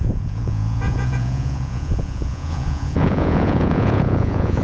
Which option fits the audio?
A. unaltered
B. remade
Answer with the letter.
B